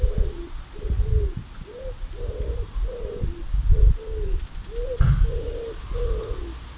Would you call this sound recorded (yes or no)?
yes